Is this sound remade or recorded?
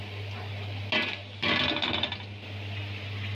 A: recorded